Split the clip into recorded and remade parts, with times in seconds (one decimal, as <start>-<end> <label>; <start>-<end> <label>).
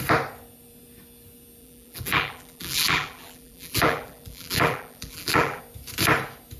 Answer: 0.0-1.6 recorded; 1.6-5.6 remade; 5.6-6.6 recorded